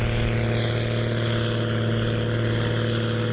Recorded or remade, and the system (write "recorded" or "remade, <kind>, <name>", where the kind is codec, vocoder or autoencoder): recorded